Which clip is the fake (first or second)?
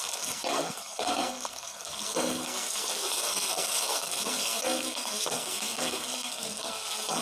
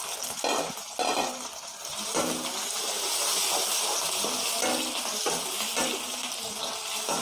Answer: first